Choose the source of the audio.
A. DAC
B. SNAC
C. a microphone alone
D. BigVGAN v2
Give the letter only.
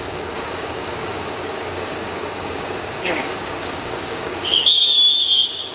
A